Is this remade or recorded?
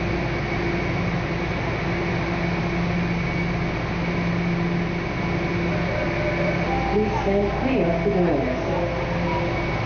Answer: recorded